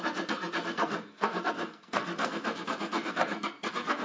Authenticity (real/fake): fake